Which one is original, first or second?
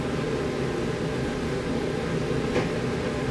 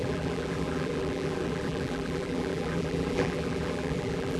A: first